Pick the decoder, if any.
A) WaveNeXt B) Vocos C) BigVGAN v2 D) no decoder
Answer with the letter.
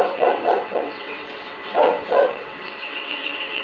A